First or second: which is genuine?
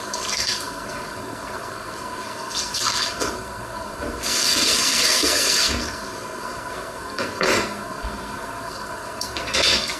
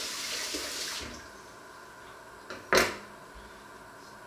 second